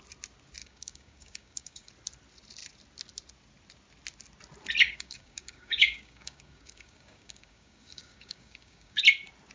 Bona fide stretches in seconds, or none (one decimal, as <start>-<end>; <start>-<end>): 0.0-0.6; 1.9-4.8; 9.0-9.5